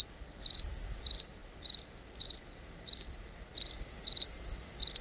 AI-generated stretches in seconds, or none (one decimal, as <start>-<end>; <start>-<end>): none